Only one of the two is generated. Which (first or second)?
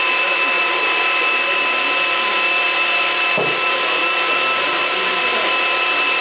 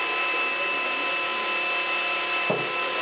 first